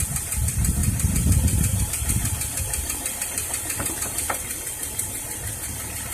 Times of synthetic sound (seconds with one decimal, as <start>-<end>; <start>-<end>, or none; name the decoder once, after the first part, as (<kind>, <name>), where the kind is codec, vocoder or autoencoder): 0.0-6.1 (vocoder, BigVGAN v2)